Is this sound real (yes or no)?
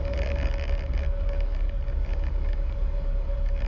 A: no